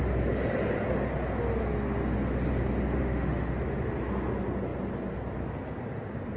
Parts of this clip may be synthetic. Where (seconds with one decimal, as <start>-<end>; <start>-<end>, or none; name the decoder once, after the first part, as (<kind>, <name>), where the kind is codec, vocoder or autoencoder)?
3.0-3.5 (autoencoder, DAC-VAE)